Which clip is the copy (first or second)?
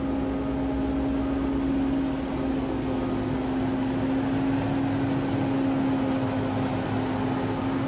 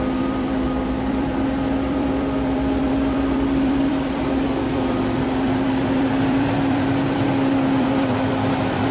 second